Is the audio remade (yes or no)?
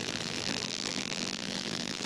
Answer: yes